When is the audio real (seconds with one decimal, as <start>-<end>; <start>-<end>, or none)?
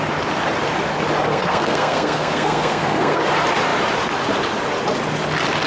0.0-1.3; 3.2-5.7